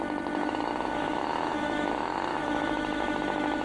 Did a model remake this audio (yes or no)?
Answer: yes